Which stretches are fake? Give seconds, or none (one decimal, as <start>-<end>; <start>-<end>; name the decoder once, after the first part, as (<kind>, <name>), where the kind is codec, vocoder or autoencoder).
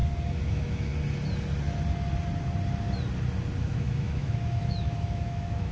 0.5-0.9 (autoencoder, DAC-VAE); 3.6-5.7